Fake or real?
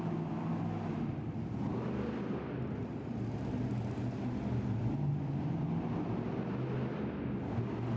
real